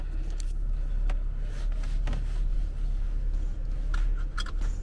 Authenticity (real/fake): real